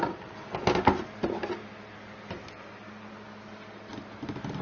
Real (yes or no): yes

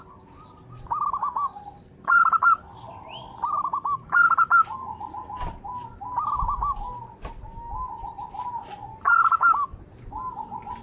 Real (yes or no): yes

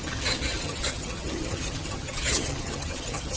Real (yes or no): no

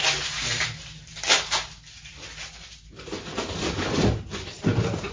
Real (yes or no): yes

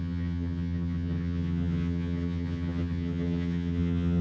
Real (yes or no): no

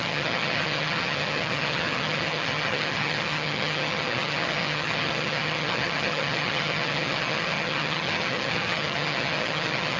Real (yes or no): no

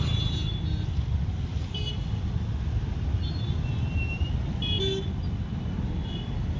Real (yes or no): yes